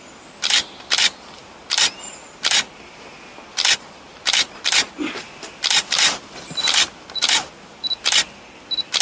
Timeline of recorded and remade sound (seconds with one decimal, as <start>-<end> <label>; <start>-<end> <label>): 0.0-9.0 recorded